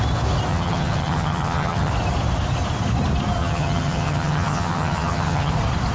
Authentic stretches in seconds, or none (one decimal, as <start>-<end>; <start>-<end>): 0.0-0.5; 1.9-3.4; 5.5-5.9